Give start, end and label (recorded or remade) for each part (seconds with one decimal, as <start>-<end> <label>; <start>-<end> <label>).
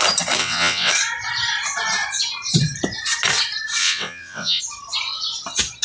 0.0-0.4 recorded; 0.4-0.9 remade; 0.9-3.8 recorded; 3.8-4.6 remade; 4.6-5.8 recorded